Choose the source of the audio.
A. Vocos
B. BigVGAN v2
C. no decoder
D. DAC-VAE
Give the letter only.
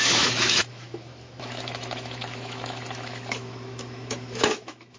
D